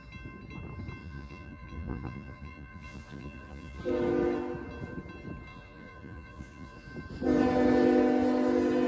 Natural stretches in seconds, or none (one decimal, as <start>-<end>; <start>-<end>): 0.0-1.0; 3.8-5.5; 6.9-8.9